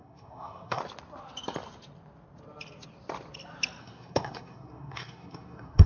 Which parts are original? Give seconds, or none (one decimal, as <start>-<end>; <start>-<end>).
0.8-3.8